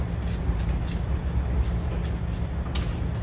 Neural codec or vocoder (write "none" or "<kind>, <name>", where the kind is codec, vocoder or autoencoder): none